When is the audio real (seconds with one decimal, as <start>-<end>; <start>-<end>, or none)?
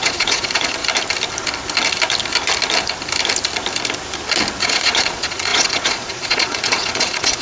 0.8-4.6